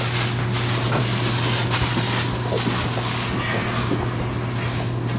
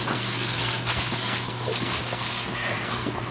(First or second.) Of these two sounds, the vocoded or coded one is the second